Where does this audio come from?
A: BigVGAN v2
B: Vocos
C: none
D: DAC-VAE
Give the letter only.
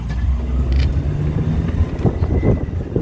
C